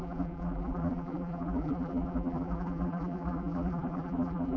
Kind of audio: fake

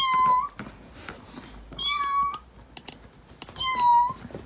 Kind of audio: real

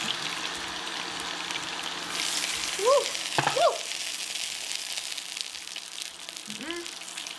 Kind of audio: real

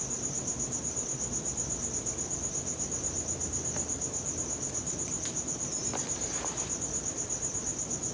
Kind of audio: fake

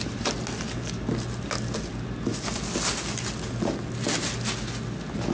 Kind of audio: real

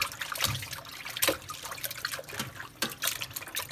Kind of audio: real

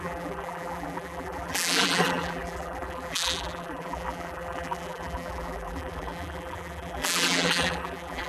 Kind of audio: fake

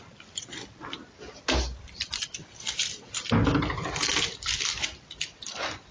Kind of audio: real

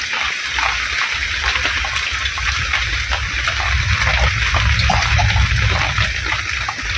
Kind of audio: real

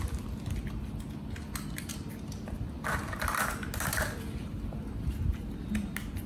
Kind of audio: real